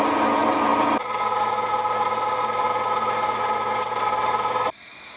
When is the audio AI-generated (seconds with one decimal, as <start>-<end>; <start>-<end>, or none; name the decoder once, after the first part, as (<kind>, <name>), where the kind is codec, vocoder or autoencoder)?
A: none

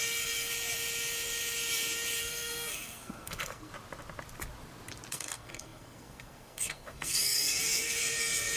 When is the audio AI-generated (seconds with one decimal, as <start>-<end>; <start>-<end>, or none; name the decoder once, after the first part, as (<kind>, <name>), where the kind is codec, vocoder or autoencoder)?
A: 0.0-0.5 (codec, SNAC); 2.2-3.7; 5.1-8.6

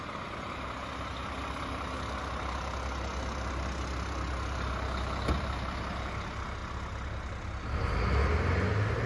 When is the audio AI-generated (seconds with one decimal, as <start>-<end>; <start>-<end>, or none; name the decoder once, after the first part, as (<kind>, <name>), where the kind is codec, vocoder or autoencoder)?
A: none

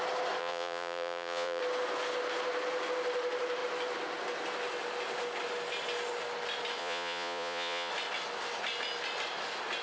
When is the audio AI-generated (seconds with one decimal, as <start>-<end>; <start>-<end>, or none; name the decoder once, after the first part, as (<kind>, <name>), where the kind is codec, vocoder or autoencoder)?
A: 0.4-1.6 (vocoder, Vocos); 6.8-7.9